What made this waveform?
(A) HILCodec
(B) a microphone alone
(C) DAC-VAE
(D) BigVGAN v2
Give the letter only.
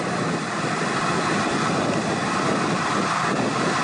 D